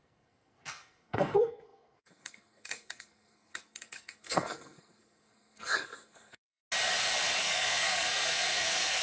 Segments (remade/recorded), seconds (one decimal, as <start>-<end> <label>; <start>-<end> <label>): 0.0-6.6 remade; 6.6-7.4 recorded; 7.4-9.0 remade